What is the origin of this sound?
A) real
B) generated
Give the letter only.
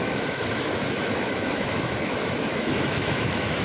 B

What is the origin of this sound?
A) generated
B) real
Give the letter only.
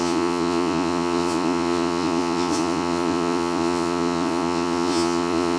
A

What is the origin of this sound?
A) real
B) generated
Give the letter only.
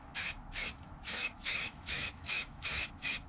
B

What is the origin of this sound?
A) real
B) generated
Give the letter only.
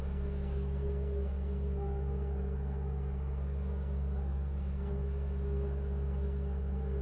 B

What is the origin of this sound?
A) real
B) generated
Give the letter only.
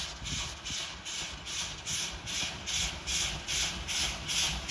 A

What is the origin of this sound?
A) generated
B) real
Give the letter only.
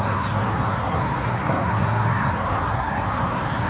A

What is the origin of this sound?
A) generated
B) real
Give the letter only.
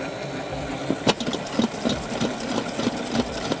B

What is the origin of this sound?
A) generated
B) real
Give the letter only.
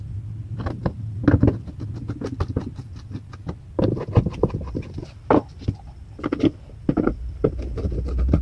B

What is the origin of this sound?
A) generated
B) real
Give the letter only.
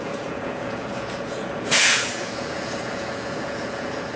A